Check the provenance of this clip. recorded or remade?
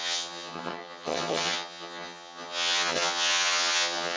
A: remade